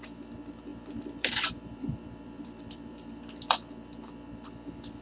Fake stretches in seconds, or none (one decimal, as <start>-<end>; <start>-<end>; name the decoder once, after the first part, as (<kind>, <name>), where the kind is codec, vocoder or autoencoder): 0.7-3.7 (vocoder, BigVGAN v2)